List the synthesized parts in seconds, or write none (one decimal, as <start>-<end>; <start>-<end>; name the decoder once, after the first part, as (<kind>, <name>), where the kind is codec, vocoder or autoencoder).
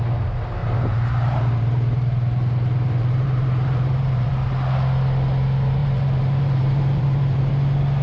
0.6-4.3 (vocoder, BigVGAN v2); 5.8-7.5